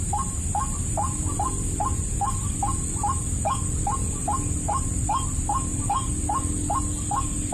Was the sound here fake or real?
real